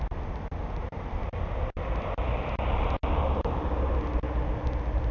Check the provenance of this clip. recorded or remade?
recorded